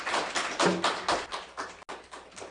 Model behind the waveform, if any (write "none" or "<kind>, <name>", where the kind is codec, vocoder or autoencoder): none